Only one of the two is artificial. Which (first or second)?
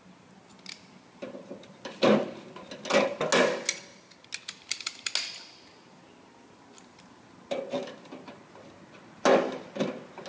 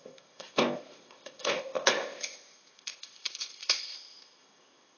second